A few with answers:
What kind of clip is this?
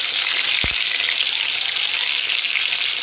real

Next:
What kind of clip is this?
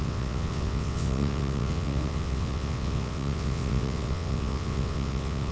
fake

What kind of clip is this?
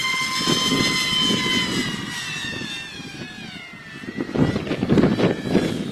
real